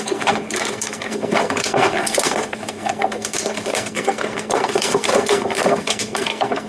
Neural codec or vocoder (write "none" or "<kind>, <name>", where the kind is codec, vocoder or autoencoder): codec, SNAC